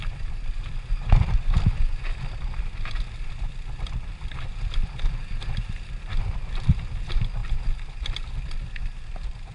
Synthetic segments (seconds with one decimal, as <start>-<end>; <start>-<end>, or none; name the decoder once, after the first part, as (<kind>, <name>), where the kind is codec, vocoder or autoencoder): none